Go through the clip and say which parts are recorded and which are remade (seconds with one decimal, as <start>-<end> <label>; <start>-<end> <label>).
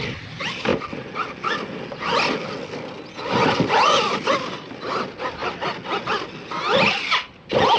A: 0.0-7.8 recorded